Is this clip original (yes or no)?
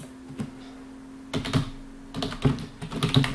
yes